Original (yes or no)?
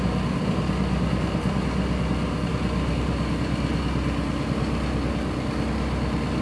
yes